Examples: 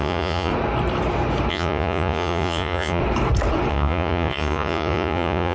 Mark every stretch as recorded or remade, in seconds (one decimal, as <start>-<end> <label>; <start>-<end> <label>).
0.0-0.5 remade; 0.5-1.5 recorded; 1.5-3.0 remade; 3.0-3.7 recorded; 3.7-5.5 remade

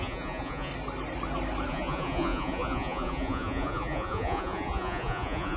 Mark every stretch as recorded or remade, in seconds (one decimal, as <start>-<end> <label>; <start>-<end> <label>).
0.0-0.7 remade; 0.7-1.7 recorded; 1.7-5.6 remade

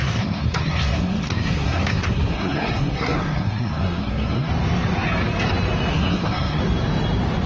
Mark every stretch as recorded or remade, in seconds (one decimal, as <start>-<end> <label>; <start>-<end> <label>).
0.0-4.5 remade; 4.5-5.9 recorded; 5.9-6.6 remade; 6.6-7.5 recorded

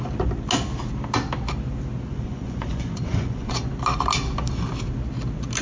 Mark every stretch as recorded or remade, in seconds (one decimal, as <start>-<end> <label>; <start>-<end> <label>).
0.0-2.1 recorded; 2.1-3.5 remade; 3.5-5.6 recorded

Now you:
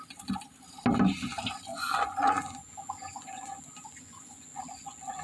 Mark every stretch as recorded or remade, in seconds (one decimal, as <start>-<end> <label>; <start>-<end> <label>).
0.0-1.7 recorded; 1.7-4.6 remade; 4.6-5.2 recorded